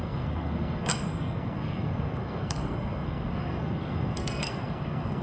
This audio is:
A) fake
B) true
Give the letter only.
A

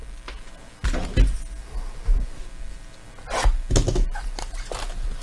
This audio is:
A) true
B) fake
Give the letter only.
A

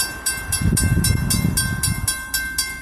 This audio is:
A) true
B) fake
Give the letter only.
A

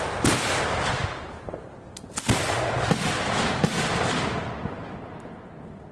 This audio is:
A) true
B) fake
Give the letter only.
A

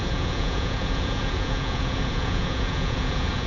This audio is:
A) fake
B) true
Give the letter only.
A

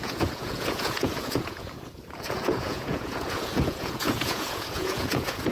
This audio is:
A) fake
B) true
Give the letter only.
A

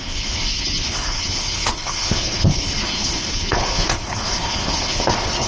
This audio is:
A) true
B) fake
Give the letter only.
B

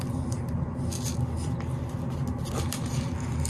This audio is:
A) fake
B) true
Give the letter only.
B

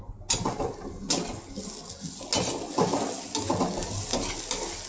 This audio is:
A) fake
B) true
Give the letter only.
B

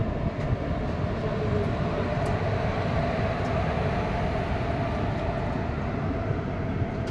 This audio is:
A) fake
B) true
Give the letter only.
B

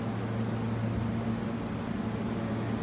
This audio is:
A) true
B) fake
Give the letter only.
A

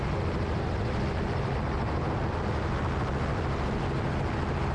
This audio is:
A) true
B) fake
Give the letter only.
A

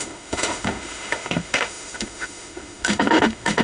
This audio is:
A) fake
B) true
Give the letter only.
A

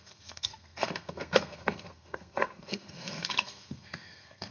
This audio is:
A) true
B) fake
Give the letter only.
B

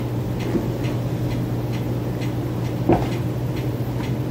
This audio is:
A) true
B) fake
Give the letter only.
A